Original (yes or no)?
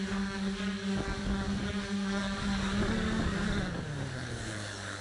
no